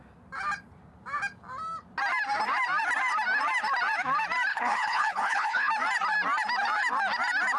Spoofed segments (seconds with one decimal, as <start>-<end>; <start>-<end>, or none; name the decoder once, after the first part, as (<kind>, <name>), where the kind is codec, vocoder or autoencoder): 4.5-5.7 (codec, HILCodec)